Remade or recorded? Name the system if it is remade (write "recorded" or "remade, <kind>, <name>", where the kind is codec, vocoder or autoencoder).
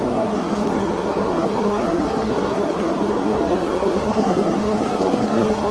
remade, codec, SNAC